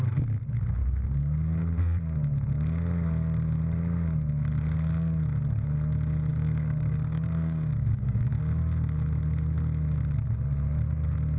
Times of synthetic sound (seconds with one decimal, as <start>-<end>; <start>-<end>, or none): 6.3-8.4